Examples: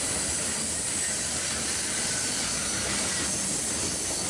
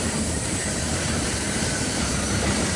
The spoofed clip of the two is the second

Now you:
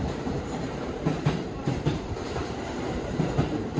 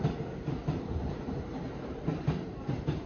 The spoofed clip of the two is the first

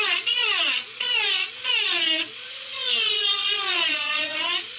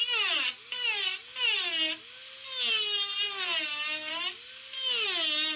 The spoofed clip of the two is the first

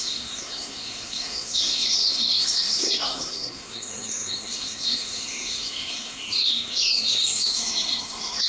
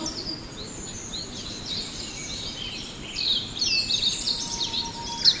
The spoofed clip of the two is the first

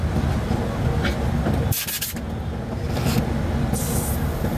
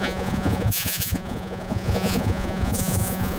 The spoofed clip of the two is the second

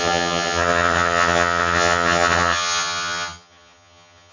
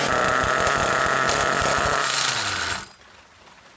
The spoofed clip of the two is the first